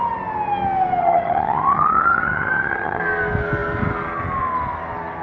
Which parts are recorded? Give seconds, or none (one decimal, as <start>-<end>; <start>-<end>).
0.0-1.0; 3.0-5.2